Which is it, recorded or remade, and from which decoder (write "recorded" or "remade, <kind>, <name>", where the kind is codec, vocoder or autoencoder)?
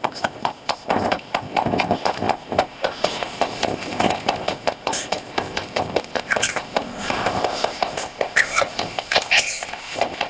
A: remade, codec, ZipCodec